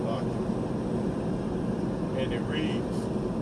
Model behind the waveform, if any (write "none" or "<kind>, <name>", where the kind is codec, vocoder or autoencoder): none